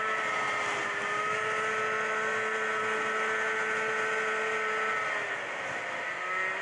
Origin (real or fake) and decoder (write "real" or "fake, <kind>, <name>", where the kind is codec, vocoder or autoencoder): real